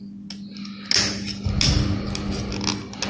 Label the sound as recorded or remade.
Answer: recorded